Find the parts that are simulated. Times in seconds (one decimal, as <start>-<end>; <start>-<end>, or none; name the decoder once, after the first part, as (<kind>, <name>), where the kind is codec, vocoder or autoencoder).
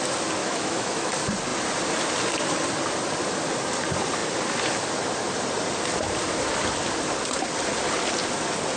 0.4-1.1 (autoencoder, DAC-VAE)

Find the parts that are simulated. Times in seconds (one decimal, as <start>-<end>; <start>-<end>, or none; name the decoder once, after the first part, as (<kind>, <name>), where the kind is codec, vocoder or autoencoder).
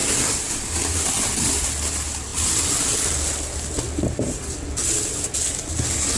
none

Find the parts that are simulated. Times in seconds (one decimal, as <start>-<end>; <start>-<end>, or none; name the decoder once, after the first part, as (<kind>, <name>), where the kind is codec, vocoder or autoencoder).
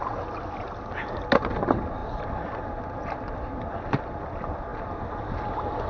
none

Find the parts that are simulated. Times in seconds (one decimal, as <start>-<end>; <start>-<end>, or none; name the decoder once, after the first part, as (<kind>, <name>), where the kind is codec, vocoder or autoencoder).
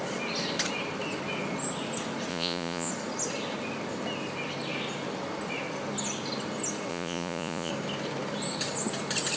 2.3-2.9 (vocoder, Vocos); 6.9-7.7